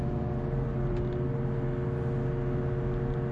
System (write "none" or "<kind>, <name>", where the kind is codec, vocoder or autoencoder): none